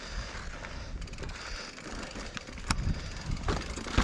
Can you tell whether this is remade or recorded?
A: recorded